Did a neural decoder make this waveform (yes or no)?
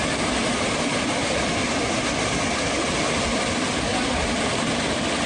no